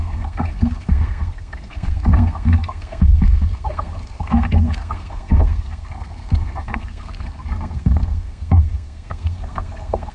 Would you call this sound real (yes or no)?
no